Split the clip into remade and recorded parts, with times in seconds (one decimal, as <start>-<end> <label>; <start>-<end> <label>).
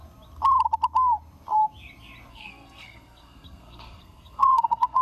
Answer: 0.0-2.3 recorded; 2.3-5.0 remade